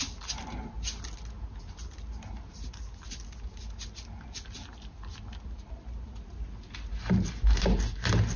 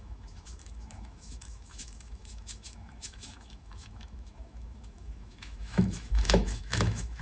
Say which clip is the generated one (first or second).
second